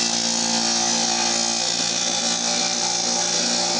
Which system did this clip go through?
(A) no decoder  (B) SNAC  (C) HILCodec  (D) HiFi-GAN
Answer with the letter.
A